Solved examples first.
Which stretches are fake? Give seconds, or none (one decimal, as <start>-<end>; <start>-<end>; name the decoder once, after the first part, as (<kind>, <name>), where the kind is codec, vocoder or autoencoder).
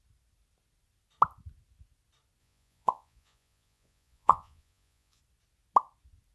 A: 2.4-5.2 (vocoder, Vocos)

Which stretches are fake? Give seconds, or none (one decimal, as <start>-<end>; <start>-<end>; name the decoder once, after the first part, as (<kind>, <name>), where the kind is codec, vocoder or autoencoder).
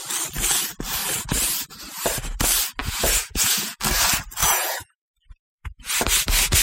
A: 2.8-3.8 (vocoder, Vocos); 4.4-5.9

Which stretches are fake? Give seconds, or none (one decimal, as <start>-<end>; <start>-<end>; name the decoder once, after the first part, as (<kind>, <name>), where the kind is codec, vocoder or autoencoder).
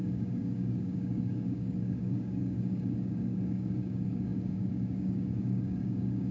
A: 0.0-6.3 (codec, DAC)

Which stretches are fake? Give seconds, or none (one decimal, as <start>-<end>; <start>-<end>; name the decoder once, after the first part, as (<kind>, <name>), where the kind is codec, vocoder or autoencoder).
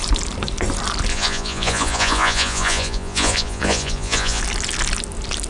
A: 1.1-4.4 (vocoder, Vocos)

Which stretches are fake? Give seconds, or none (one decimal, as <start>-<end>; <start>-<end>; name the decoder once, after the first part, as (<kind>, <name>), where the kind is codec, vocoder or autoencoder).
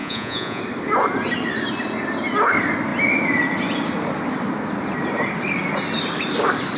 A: 0.0-0.6 (vocoder, Vocos)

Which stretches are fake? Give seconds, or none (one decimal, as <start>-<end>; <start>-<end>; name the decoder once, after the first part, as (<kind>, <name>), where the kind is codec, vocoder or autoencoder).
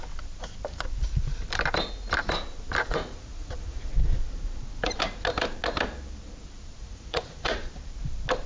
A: 2.8-3.9 (vocoder, Vocos); 6.8-7.7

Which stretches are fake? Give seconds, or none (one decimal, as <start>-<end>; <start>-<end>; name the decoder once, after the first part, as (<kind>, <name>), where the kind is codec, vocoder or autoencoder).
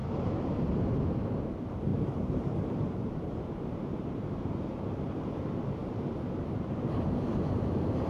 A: 0.0-0.9 (vocoder, BigVGAN v2); 1.9-4.5